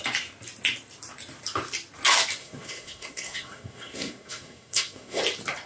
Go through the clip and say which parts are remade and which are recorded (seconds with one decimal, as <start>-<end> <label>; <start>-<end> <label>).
0.0-2.4 recorded; 2.4-5.2 remade; 5.2-5.7 recorded

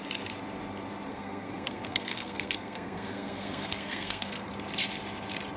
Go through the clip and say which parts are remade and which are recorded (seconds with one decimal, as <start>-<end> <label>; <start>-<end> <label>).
0.0-1.1 recorded; 1.1-4.5 remade; 4.5-5.6 recorded

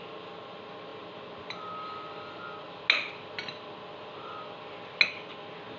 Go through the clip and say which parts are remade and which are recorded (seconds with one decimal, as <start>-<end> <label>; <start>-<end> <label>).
0.0-5.8 recorded

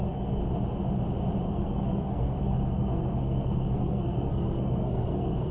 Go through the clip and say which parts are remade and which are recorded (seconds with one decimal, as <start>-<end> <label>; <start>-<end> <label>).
0.0-0.4 remade; 0.4-1.5 recorded; 1.5-5.5 remade

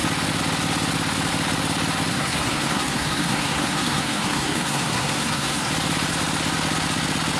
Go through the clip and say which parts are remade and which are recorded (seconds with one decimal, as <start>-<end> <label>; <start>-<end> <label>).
0.0-2.1 recorded; 2.1-5.7 remade; 5.7-7.4 recorded

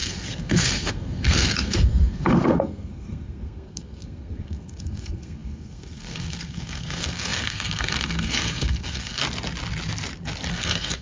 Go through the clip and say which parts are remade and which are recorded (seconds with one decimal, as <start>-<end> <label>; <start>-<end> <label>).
0.0-9.2 remade; 9.2-10.5 recorded; 10.5-11.0 remade

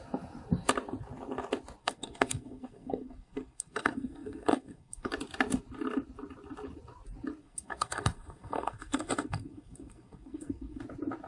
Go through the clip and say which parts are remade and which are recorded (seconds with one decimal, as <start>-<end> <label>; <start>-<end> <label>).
0.0-1.8 recorded; 1.8-5.1 remade; 5.1-7.4 recorded; 7.4-10.8 remade; 10.8-11.3 recorded

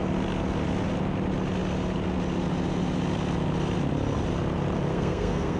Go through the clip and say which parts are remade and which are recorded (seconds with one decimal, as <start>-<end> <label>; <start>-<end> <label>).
0.0-4.9 recorded; 4.9-5.6 remade